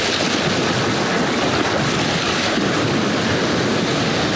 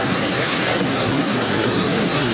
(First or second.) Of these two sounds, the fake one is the second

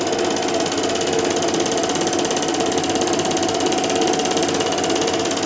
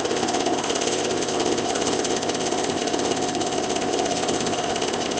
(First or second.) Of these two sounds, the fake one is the second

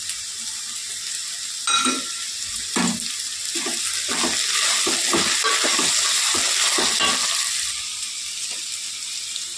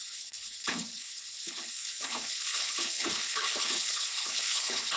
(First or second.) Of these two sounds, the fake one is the second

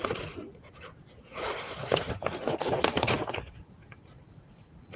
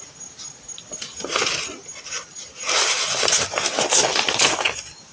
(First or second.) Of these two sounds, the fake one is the first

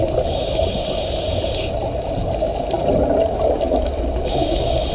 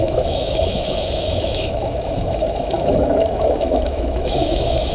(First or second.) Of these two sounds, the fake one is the second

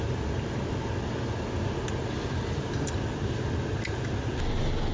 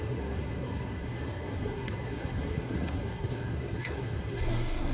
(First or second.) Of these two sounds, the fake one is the second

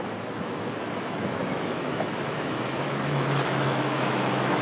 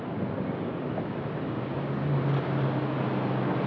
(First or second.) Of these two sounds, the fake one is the first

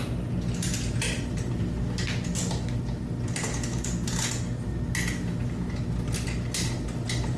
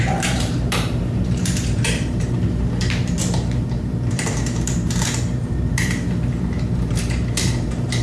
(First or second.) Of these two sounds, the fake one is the second